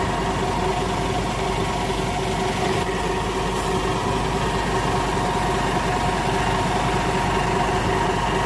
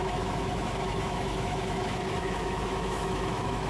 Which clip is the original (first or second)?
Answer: first